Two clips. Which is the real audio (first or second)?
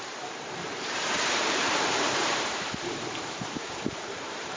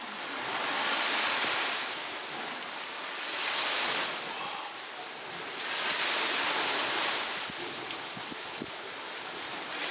second